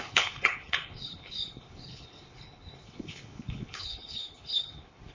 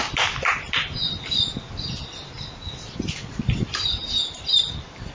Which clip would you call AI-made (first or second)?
first